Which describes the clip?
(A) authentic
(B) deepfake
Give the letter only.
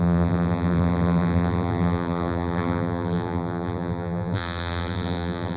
B